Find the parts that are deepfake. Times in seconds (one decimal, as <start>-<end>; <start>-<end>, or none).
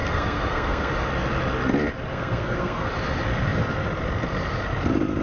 0.0-0.9; 2.1-2.9